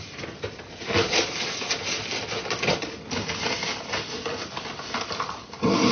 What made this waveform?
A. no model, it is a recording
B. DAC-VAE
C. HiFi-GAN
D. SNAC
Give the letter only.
A